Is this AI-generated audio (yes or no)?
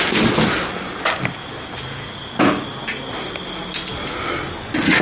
no